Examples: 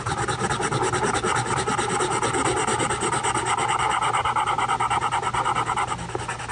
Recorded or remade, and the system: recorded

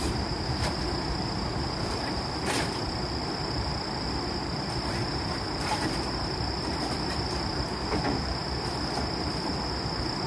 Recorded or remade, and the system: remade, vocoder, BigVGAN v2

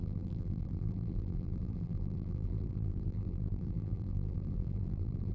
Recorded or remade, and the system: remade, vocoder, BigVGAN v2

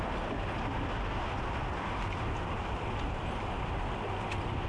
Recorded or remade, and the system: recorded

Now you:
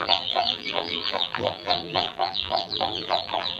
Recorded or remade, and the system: remade, vocoder, BigVGAN v2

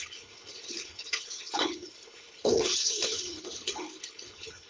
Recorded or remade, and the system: remade, codec, HILCodec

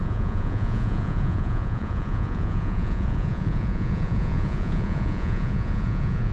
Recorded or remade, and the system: remade, vocoder, Vocos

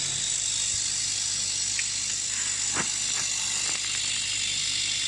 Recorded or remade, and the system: recorded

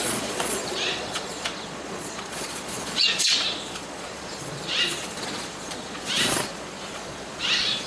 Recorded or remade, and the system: remade, vocoder, Vocos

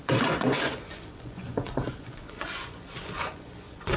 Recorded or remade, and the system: remade, vocoder, Vocos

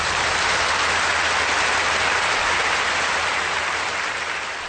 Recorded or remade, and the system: recorded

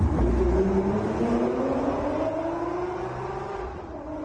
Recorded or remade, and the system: recorded